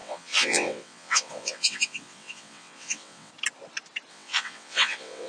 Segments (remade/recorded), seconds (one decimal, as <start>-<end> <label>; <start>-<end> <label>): 0.0-3.3 remade; 3.3-4.1 recorded; 4.1-5.3 remade